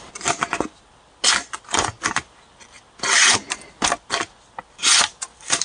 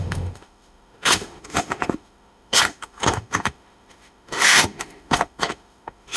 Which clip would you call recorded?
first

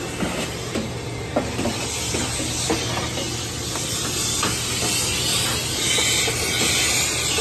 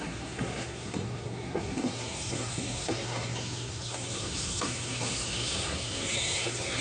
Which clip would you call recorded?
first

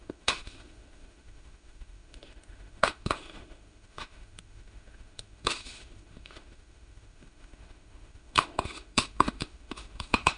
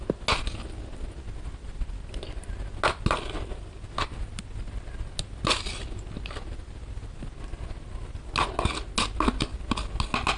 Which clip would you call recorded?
second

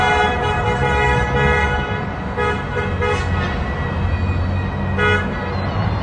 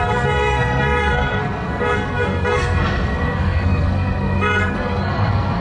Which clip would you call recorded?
first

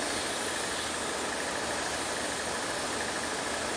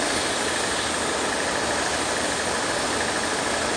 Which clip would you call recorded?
first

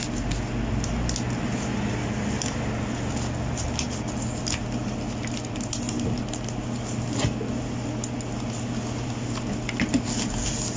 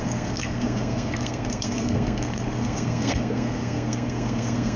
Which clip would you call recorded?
first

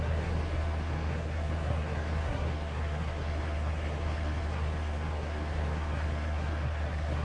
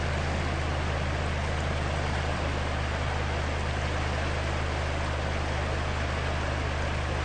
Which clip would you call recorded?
second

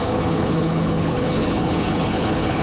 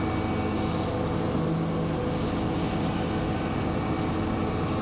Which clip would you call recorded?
second